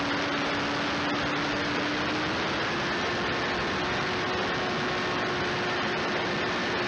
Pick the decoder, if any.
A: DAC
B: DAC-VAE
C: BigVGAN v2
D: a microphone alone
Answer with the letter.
D